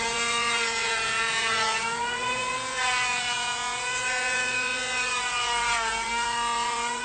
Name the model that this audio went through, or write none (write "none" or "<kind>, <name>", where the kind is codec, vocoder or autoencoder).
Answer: vocoder, Vocos